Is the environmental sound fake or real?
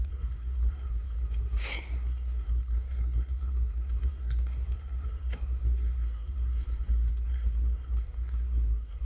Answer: fake